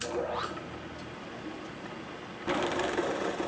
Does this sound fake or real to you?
real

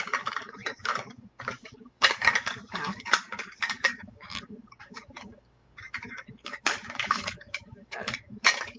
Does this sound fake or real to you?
fake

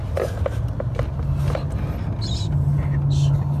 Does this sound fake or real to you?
real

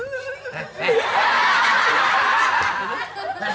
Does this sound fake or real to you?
real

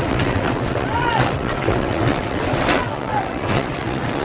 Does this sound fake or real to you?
fake